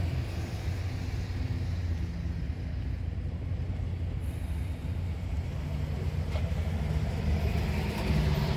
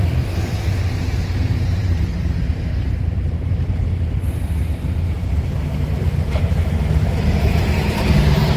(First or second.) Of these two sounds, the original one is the first